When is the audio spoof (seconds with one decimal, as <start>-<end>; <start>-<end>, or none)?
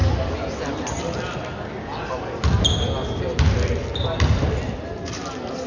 none